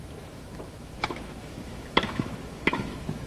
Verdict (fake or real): fake